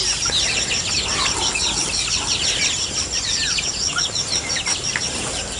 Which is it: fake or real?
real